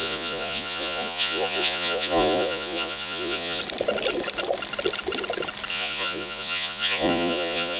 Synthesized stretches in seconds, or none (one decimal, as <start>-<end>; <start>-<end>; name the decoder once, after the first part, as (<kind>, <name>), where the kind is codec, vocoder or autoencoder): 0.0-3.6 (vocoder, Vocos); 5.7-7.8